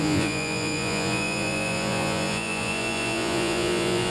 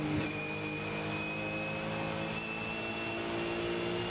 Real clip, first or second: second